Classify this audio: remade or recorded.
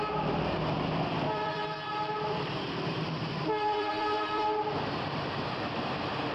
remade